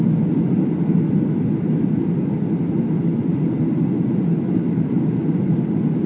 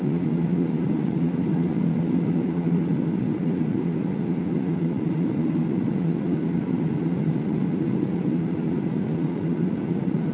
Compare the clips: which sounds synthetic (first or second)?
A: second